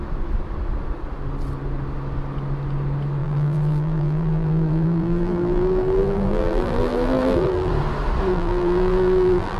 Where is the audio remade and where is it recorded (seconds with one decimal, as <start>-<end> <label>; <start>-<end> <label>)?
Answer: 0.0-3.2 recorded; 3.2-7.7 remade; 7.7-8.3 recorded; 8.3-9.6 remade